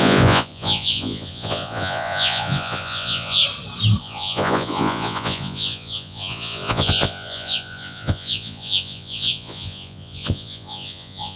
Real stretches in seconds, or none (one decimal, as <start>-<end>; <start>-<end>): 3.4-4.0

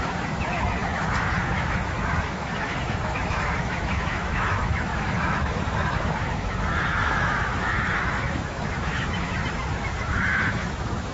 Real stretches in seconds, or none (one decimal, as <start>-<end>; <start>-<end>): none

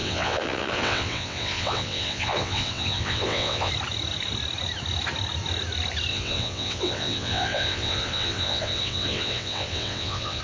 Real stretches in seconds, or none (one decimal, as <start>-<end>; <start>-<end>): 3.7-6.1

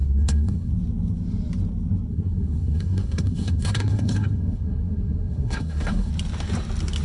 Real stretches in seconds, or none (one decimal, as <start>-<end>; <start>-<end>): 0.7-2.1; 6.1-7.0

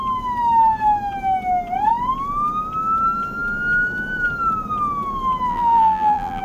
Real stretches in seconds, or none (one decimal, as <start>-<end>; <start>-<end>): 0.0-5.5

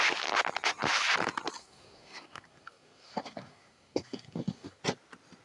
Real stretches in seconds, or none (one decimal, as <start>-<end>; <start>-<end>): 0.0-1.6; 4.8-5.4

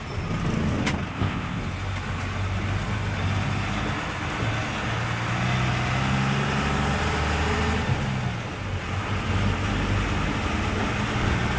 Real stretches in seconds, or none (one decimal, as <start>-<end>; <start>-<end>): 0.0-1.1; 1.6-11.6